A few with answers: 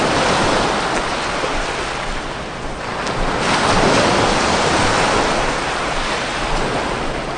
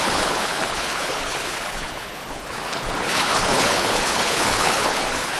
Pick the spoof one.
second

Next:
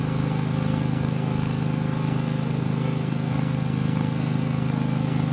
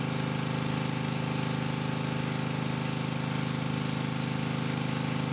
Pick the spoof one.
first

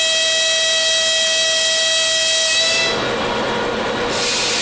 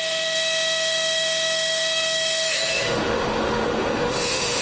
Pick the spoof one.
second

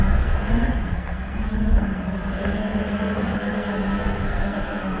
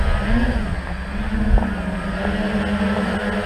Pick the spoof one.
first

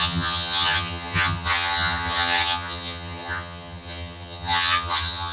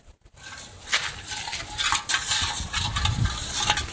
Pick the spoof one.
first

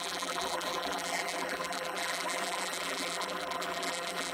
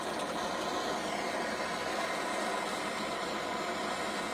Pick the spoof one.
first